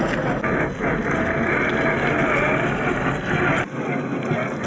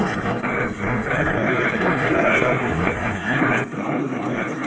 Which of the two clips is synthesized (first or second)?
second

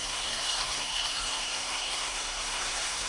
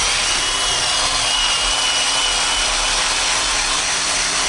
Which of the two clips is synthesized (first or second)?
first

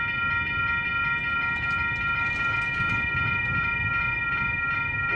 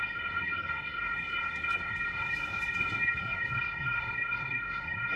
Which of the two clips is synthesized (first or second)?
second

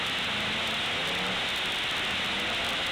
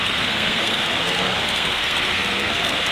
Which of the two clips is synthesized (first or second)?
second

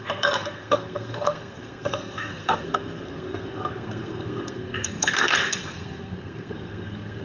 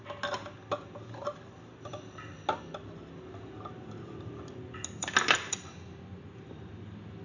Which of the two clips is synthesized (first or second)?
first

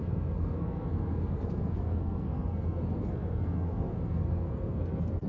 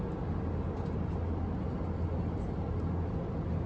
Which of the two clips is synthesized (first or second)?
first